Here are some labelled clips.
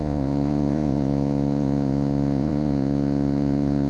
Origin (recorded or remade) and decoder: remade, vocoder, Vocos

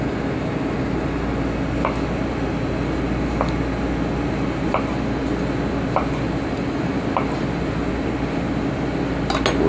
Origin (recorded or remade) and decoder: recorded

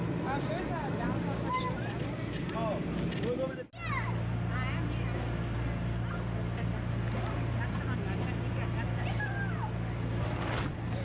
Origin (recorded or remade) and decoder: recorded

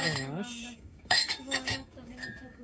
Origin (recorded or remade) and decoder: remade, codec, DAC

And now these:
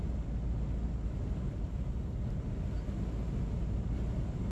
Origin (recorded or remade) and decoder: recorded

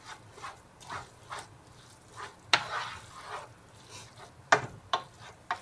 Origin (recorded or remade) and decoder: recorded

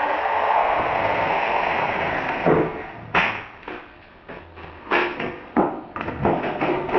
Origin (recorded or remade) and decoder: remade, codec, SNAC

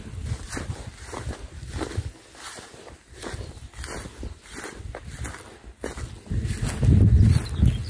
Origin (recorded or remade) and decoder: recorded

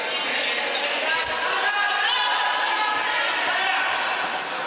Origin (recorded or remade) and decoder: recorded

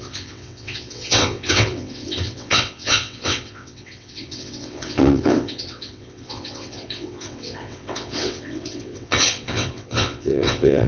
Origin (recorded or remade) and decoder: remade, vocoder, WaveNeXt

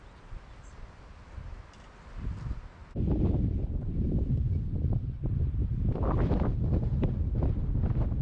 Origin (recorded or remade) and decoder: recorded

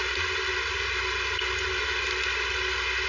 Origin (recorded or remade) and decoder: recorded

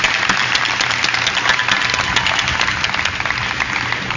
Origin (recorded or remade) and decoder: recorded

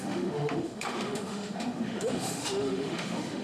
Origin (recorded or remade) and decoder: remade, autoencoder, DAC-VAE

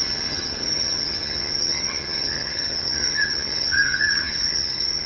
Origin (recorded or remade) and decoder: remade, vocoder, HiFi-GAN